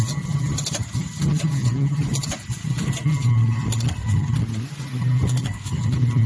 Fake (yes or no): no